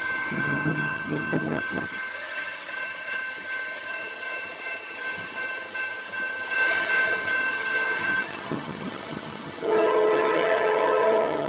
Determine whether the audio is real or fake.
fake